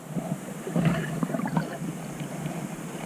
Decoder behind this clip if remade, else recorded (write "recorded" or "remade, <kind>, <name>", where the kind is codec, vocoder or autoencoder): recorded